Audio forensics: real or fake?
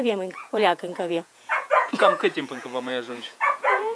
fake